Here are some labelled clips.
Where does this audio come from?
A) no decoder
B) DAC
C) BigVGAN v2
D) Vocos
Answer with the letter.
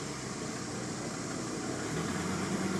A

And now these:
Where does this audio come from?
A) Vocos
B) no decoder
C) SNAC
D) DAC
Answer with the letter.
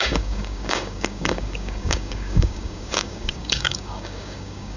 D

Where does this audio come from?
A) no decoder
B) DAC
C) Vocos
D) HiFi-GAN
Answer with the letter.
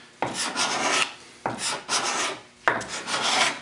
A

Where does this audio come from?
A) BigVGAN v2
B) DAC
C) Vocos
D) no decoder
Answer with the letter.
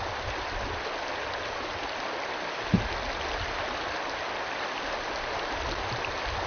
D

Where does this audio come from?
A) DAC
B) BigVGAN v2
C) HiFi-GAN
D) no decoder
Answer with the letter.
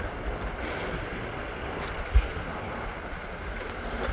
D